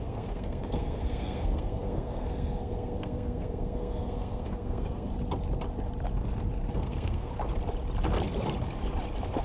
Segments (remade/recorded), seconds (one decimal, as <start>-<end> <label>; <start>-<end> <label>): 0.0-5.1 remade; 5.1-6.7 recorded; 6.7-7.3 remade; 7.3-9.4 recorded

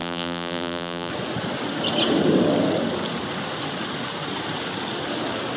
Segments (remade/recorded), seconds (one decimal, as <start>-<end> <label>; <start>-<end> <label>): 0.0-1.1 remade; 1.1-5.6 recorded